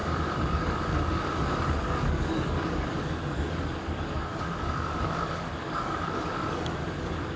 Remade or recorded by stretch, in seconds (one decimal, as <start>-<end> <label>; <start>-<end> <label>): 0.0-7.4 remade